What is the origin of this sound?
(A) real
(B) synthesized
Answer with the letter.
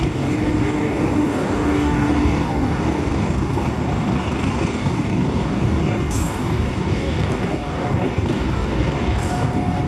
B